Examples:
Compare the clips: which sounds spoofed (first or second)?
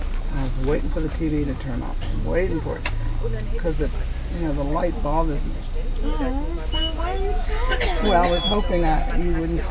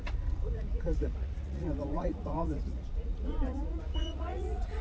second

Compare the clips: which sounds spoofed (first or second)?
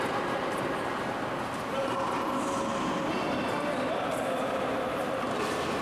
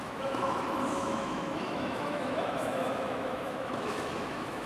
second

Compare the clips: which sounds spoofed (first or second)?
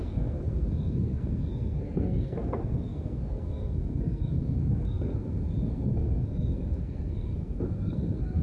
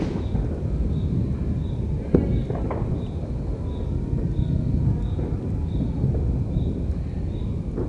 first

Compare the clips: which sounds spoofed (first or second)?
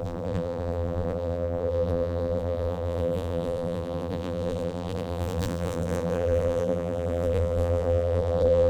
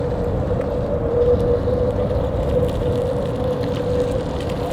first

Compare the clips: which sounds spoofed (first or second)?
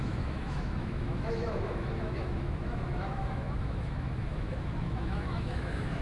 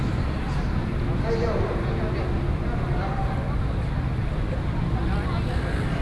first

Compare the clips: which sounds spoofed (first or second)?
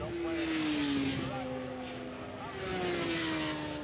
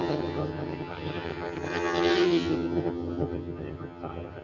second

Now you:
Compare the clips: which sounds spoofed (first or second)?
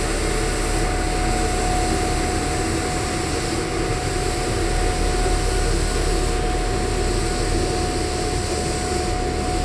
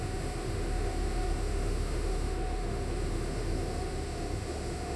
second